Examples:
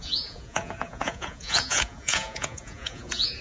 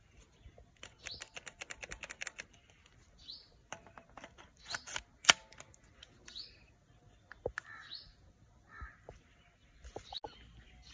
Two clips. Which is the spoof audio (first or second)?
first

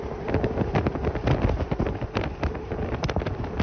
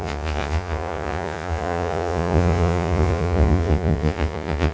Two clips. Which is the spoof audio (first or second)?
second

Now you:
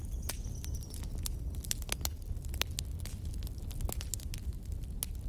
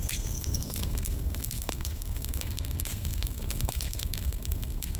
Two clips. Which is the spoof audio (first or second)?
second